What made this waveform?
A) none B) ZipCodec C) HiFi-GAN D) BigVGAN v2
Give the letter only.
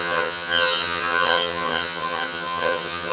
C